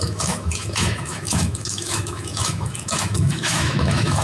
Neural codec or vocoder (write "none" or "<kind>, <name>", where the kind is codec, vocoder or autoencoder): autoencoder, DAC-VAE